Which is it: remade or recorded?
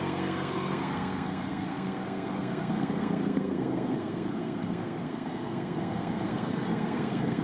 remade